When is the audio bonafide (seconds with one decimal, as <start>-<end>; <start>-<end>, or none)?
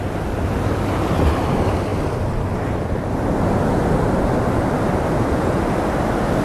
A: 0.0-6.4